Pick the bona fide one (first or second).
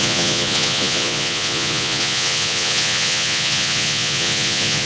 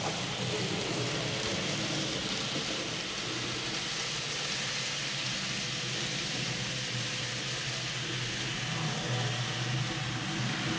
second